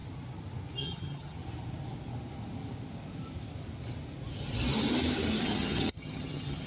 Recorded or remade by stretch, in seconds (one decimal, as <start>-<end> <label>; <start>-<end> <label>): 0.0-0.8 recorded; 0.8-1.4 remade; 1.4-5.4 recorded; 5.4-6.7 remade